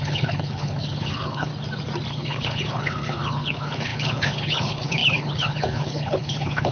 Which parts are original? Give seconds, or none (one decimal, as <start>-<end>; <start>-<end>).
1.5-2.1